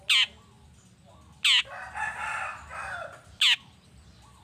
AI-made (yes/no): no